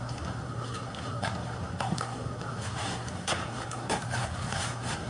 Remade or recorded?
remade